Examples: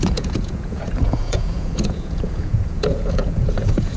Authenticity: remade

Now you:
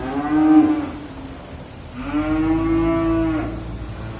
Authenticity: recorded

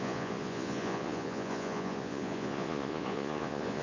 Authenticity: remade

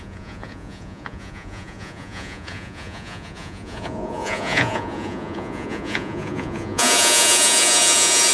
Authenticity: remade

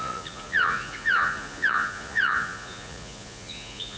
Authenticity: remade